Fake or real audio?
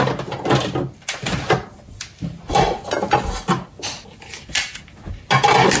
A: real